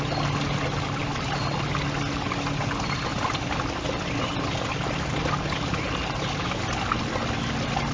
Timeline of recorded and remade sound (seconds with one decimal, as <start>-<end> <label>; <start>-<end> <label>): 0.0-7.9 recorded